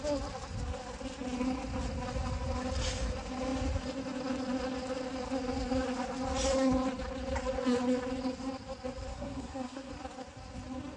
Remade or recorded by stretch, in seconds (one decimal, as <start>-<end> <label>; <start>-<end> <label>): 0.0-9.1 recorded; 9.1-9.9 remade; 9.9-11.0 recorded